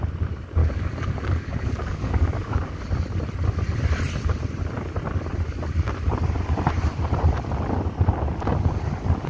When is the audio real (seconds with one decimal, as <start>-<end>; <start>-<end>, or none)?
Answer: 0.0-0.6; 2.8-9.3